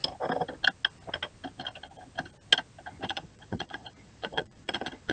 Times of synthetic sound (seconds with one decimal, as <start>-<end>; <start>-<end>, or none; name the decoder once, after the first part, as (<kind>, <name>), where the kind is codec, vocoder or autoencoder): 3.1-5.1 (vocoder, Vocos)